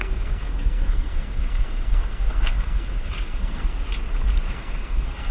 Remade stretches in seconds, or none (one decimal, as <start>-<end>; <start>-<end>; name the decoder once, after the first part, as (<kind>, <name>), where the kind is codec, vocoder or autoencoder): 0.0-3.7 (codec, SNAC); 4.5-5.3